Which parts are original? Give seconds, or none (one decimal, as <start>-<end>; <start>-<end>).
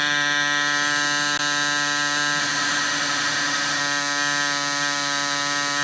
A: 0.0-2.4; 3.8-5.8